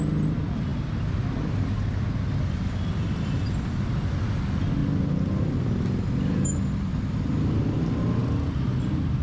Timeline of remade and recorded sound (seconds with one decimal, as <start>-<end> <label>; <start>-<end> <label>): 0.0-9.2 recorded